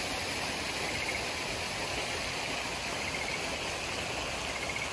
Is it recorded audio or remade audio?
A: recorded